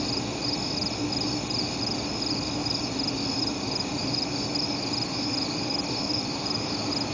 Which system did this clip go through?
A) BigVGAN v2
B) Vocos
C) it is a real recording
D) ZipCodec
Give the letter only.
C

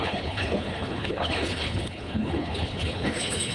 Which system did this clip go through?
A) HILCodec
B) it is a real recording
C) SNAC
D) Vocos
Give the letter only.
A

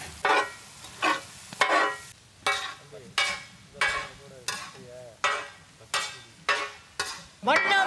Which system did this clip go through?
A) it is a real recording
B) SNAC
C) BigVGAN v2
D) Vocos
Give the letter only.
A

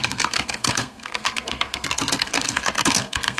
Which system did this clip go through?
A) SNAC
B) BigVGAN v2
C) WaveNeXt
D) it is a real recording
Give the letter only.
A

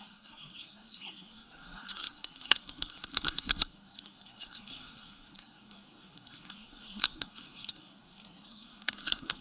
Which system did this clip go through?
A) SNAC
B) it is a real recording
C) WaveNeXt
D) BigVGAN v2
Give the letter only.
A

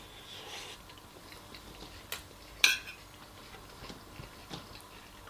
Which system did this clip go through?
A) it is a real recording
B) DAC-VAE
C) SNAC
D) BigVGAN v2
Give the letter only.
A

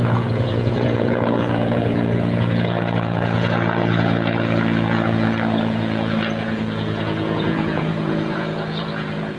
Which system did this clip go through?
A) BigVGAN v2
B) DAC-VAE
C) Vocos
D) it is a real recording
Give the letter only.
C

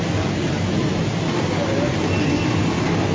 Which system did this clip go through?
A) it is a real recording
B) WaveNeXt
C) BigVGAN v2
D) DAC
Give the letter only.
A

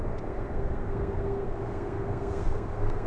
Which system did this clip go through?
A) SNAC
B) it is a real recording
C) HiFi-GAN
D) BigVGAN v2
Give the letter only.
A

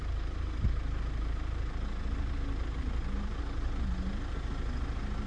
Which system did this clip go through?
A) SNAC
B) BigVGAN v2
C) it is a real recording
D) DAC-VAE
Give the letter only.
C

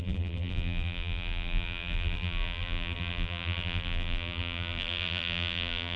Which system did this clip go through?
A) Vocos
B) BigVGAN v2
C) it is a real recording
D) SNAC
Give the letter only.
B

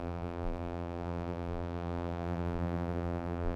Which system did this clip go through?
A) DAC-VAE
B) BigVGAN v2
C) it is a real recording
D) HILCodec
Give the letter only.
B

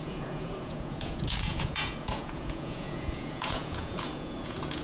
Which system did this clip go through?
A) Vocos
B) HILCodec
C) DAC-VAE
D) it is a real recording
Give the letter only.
A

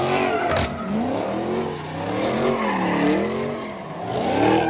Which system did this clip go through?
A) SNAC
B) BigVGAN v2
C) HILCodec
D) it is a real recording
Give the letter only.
D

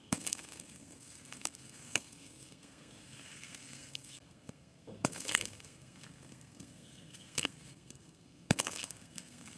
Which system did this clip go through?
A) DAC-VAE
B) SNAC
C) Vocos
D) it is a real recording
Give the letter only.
B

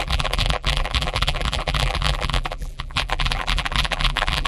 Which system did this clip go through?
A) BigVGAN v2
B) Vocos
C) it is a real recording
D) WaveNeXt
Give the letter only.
A